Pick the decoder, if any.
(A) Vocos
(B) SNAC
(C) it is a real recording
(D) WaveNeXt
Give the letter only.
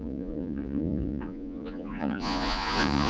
A